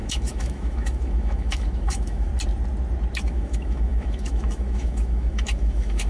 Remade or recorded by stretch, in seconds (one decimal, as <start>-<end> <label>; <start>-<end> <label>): 0.0-2.3 remade; 2.3-3.2 recorded; 3.2-6.1 remade